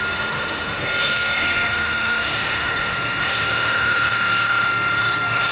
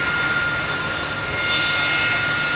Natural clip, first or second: second